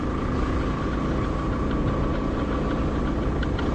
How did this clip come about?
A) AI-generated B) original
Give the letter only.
B